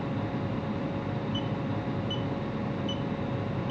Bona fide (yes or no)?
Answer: yes